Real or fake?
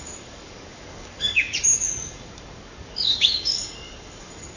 fake